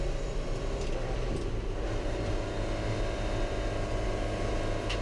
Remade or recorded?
recorded